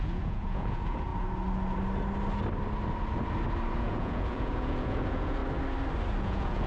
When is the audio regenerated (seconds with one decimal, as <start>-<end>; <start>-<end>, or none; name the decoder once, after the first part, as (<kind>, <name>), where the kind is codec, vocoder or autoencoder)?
0.0-1.1 (vocoder, Vocos); 3.8-5.4; 6.2-6.7